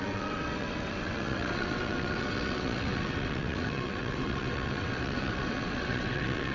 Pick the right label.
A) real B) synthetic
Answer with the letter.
B